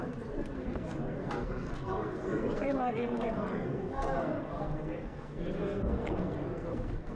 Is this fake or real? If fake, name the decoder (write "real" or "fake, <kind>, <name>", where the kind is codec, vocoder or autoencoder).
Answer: fake, codec, SNAC